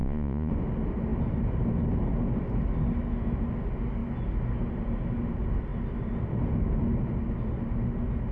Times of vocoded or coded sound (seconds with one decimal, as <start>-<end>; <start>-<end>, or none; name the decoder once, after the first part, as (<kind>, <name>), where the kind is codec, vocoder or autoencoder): 0.0-0.5 (vocoder, Vocos)